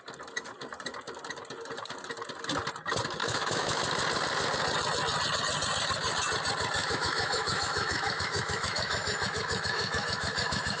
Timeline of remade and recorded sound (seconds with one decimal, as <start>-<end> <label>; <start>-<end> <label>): 0.0-3.2 recorded; 3.2-3.8 remade; 3.8-6.8 recorded; 6.8-10.8 remade